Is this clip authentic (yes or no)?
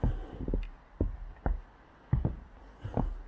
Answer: yes